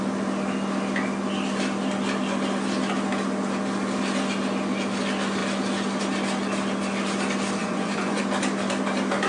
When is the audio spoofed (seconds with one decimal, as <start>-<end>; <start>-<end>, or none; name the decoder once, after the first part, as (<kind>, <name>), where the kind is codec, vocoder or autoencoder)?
7.6-8.2 (vocoder, Vocos)